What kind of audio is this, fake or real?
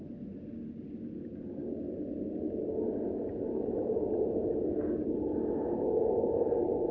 real